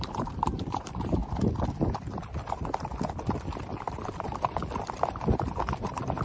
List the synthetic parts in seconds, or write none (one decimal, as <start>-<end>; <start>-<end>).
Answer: 0.0-1.2; 3.7-4.6; 5.5-6.2